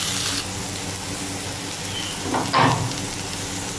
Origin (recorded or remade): recorded